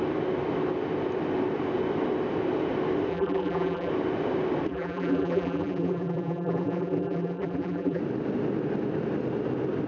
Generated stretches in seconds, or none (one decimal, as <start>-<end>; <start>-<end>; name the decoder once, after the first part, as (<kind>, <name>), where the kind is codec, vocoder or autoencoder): 3.1-3.9 (vocoder, BigVGAN v2); 4.7-8.0